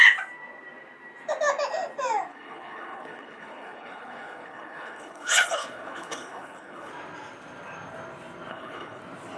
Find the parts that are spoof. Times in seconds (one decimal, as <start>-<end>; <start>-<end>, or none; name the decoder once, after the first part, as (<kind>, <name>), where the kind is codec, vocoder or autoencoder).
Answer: 2.3-6.9 (codec, HILCodec); 8.5-9.0